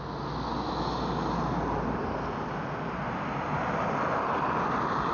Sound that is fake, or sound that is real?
real